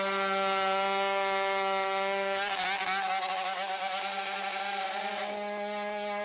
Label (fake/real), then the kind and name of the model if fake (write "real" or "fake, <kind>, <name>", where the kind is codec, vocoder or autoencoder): real